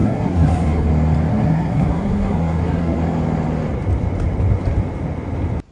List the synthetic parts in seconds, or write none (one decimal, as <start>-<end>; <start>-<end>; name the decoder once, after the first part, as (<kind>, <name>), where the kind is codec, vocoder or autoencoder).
0.0-0.9 (codec, SNAC); 1.3-3.0